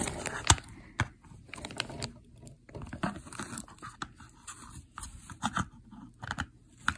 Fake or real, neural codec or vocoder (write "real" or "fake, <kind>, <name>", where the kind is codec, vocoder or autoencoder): real